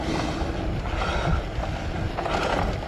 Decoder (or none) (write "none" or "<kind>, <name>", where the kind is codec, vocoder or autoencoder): none